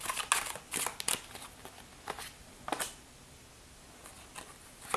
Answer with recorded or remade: recorded